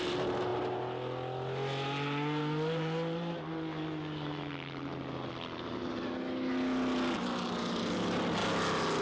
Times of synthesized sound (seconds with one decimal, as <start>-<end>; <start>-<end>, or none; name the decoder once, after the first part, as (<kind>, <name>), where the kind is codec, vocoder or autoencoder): none